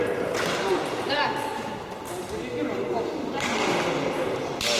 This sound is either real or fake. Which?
real